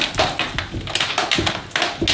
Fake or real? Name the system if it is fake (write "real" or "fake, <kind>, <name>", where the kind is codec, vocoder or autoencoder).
real